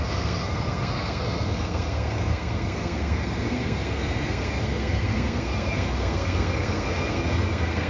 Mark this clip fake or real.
fake